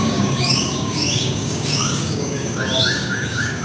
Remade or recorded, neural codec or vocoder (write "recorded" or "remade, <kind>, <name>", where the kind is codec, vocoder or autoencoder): remade, codec, DAC